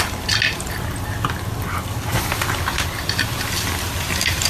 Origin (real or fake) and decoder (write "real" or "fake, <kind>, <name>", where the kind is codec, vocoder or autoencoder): real